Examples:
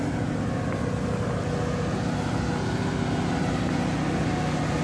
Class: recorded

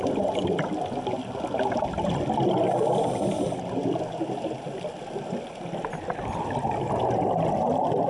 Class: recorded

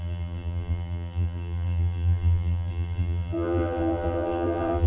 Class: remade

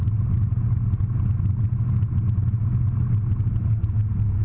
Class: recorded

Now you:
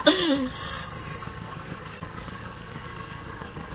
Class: remade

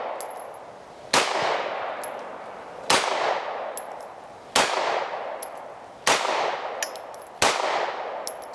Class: recorded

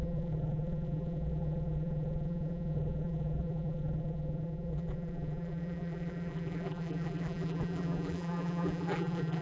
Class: remade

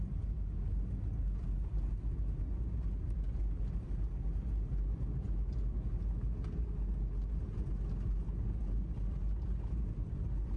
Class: recorded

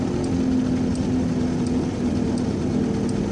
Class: recorded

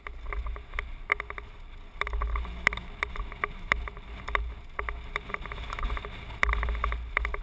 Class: recorded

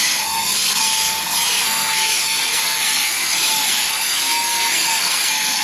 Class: remade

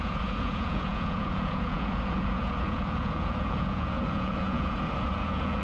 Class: remade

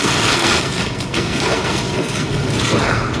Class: remade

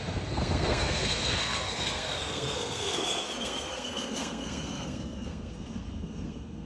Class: remade